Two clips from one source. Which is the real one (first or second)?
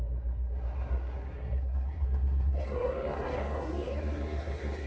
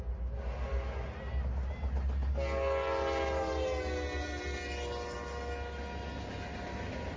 second